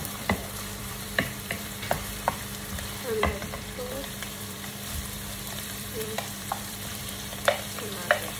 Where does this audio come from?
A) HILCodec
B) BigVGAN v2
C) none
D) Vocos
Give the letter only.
B